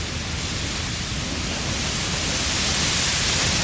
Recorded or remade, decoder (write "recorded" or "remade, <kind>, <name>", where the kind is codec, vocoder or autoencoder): recorded